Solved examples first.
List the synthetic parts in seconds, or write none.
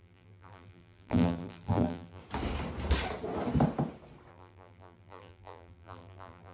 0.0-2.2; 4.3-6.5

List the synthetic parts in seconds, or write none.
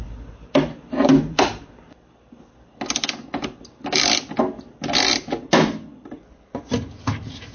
1.1-2.4; 5.9-6.8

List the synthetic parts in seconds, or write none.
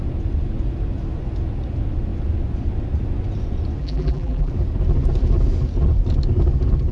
3.8-4.5